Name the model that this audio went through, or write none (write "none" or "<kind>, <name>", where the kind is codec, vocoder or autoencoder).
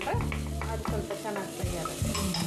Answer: none